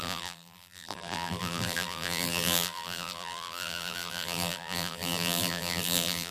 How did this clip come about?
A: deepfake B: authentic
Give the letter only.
A